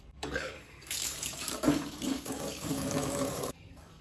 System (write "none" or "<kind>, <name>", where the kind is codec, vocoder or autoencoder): codec, DAC